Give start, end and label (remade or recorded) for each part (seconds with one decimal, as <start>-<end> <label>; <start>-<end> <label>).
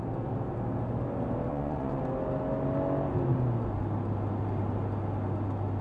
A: 0.0-1.5 recorded; 1.5-2.0 remade; 2.0-5.8 recorded